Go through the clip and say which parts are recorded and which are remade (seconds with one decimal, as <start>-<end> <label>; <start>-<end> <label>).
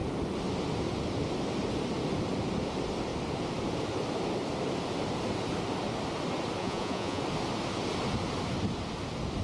0.0-6.6 recorded; 6.6-7.2 remade; 7.2-9.4 recorded